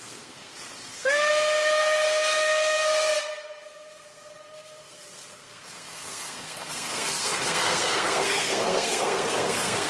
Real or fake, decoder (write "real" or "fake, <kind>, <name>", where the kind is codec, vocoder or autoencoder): fake, codec, SNAC